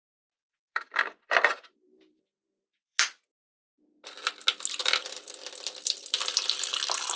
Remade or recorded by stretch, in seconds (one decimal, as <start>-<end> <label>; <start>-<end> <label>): 0.0-0.5 recorded; 0.5-3.6 remade; 3.6-4.8 recorded; 4.8-6.3 remade; 6.3-7.2 recorded